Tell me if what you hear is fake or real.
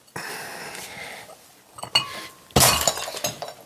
real